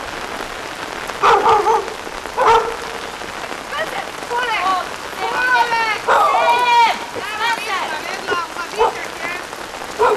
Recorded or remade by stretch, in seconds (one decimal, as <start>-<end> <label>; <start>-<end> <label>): 0.0-10.2 recorded